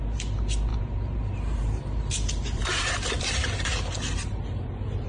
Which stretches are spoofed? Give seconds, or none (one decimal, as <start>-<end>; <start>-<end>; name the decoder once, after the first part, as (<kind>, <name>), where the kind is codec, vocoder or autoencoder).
0.7-3.2 (vocoder, BigVGAN v2)